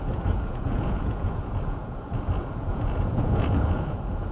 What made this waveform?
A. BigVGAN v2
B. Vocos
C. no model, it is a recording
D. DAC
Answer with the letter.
B